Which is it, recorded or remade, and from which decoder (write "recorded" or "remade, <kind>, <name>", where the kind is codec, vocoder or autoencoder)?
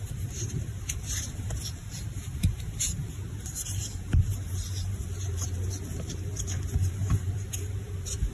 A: remade, vocoder, BigVGAN v2